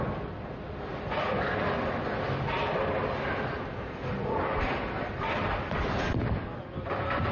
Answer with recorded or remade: recorded